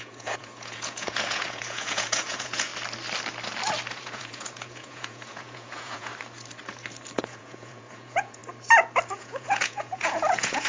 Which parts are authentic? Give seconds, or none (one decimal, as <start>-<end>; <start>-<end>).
2.7-3.9; 6.1-7.2; 8.4-9.1